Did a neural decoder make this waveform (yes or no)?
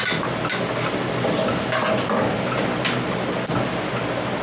no